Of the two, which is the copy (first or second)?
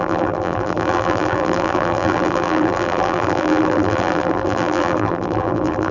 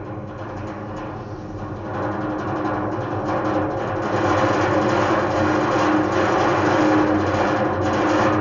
first